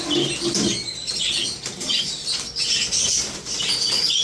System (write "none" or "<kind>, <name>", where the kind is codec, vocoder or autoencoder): none